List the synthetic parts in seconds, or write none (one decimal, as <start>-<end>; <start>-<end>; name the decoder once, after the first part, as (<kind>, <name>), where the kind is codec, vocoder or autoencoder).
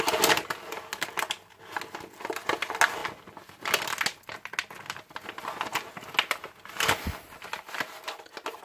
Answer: none